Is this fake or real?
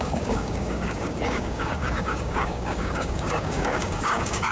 fake